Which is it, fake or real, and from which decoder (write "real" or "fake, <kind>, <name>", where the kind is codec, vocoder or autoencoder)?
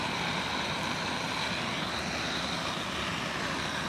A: real